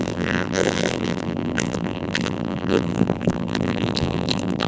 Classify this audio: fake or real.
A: fake